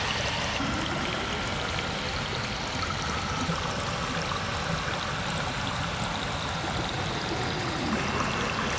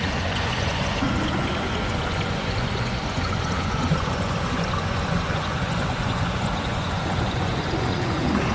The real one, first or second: first